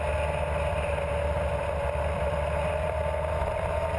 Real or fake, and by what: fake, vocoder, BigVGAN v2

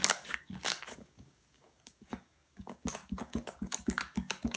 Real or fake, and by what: fake, codec, DAC